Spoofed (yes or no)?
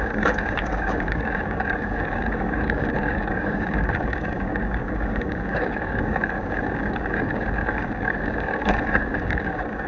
yes